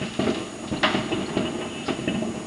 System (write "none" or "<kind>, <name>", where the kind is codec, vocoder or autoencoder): none